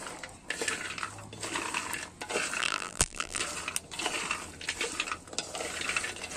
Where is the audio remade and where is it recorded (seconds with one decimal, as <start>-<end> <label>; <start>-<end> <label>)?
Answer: 0.0-2.6 recorded; 2.6-3.4 remade; 3.4-6.4 recorded